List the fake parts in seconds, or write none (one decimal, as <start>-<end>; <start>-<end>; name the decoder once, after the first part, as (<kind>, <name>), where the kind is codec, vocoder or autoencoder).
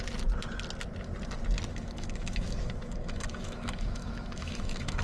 1.7-5.0 (autoencoder, DAC-VAE)